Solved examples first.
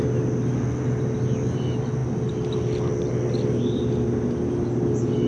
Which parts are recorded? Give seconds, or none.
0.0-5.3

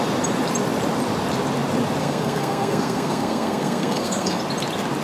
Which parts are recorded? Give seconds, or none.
0.0-2.0; 4.4-5.0